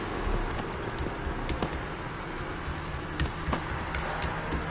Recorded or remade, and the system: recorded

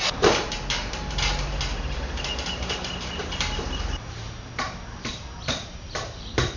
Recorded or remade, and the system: remade, vocoder, BigVGAN v2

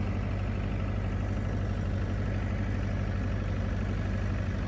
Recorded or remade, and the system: recorded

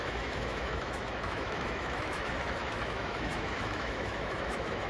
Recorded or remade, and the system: remade, autoencoder, DAC-VAE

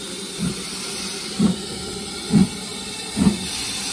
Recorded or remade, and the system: recorded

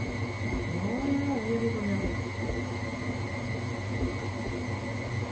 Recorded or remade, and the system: recorded